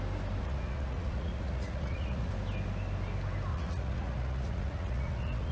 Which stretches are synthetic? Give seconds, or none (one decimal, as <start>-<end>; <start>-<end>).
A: 0.4-2.3; 3.5-5.5